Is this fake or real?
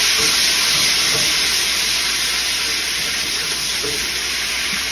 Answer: fake